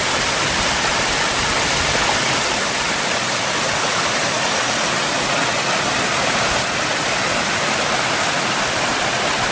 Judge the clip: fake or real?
real